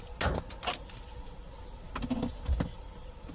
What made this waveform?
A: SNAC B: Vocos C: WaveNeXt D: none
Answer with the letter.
D